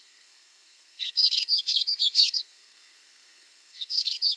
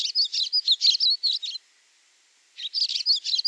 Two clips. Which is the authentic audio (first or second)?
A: second